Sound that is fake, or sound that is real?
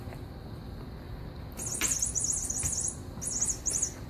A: real